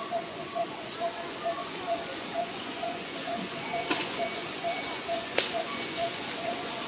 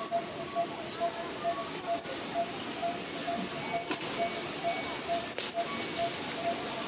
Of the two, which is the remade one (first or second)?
first